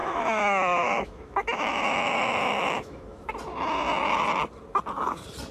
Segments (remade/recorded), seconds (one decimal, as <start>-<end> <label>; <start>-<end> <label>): 0.0-3.3 remade; 3.3-5.5 recorded